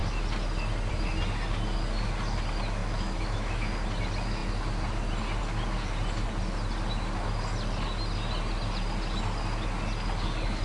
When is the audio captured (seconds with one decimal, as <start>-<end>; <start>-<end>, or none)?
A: 0.0-2.8; 3.7-10.6

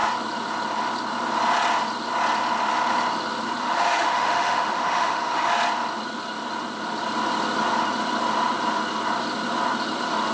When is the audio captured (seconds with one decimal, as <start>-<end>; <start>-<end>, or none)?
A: 0.0-3.6; 5.5-10.3